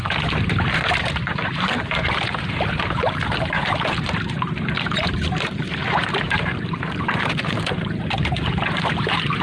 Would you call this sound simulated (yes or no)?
yes